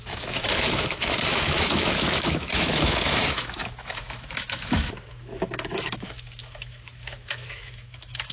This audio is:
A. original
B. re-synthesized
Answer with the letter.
B